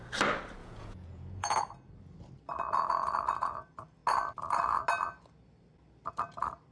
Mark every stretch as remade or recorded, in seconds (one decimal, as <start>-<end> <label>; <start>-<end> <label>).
0.0-0.6 recorded; 0.6-1.7 remade; 1.7-6.7 recorded